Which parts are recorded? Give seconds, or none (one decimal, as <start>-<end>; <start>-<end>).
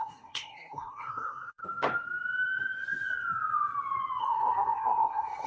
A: 1.6-4.2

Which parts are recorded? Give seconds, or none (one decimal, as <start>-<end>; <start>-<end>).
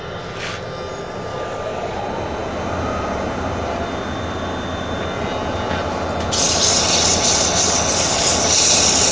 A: 0.0-1.3; 2.0-9.1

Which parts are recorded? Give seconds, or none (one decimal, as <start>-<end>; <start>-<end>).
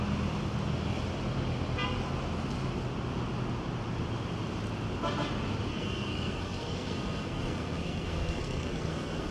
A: 0.0-5.7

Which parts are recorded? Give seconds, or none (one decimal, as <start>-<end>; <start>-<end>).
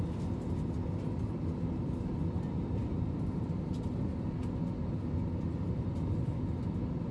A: 0.0-7.1